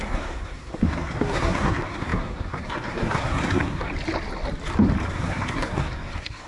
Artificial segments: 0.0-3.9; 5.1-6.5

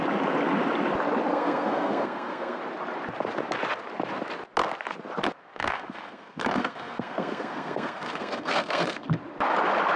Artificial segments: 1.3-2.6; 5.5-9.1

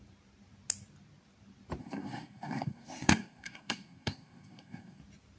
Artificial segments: 1.8-5.0

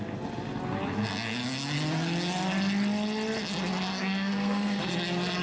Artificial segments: 3.9-4.9

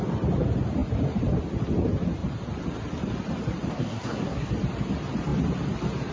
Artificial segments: 3.7-4.5

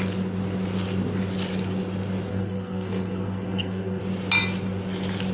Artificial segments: 2.3-4.0

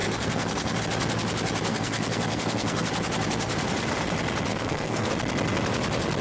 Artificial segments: 0.0-0.8; 1.7-2.9; 4.5-5.1

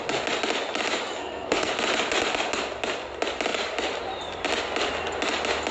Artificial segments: 1.2-1.7